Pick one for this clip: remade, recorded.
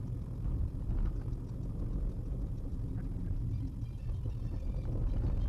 recorded